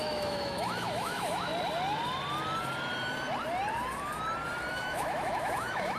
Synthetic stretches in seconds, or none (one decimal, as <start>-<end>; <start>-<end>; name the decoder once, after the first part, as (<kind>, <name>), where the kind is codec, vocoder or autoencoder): 0.0-1.5 (autoencoder, DAC-VAE); 4.7-6.0

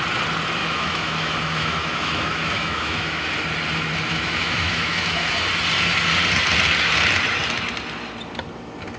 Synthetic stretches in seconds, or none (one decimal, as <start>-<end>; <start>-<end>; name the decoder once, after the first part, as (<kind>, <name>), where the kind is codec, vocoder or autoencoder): 0.6-3.3 (autoencoder, DAC-VAE); 4.1-5.3

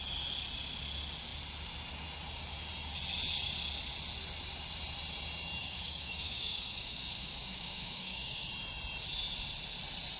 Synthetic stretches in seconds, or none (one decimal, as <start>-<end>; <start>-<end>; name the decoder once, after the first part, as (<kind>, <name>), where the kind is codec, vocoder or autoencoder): 5.6-8.5 (autoencoder, DAC-VAE)

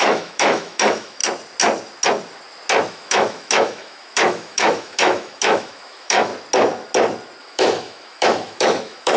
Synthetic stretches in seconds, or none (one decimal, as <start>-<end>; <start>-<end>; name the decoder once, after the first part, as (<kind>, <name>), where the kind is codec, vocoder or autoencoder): 0.0-1.2 (autoencoder, DAC-VAE); 2.9-6.3; 7.4-9.2

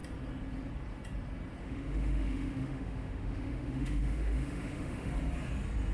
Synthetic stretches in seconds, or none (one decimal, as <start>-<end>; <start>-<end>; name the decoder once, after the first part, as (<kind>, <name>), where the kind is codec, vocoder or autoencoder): 1.6-5.1 (autoencoder, DAC-VAE)

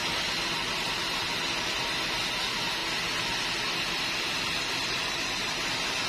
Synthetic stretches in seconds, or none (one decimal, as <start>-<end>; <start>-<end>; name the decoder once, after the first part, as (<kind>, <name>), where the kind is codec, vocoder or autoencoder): none

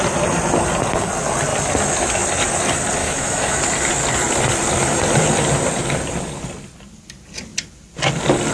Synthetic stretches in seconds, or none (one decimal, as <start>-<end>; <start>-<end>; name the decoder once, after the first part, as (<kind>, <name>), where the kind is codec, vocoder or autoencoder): 3.0-3.6 (autoencoder, DAC-VAE)